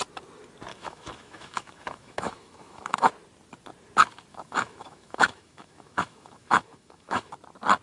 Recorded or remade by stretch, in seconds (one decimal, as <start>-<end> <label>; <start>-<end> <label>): 0.0-0.7 recorded; 0.7-3.1 remade; 3.1-4.3 recorded; 4.3-7.3 remade; 7.3-7.8 recorded